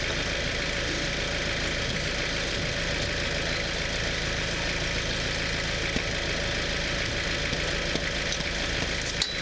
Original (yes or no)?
yes